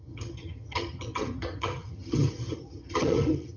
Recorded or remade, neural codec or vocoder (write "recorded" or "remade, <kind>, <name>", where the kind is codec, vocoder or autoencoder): remade, vocoder, HiFi-GAN